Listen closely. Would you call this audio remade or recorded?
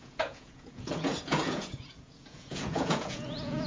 remade